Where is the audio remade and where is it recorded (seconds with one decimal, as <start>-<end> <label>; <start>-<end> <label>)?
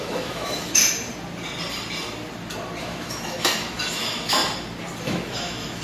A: 0.0-0.8 remade; 0.8-2.8 recorded; 2.8-4.4 remade; 4.4-5.0 recorded; 5.0-5.8 remade